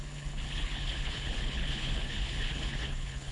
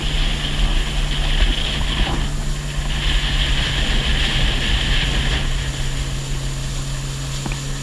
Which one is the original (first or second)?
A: second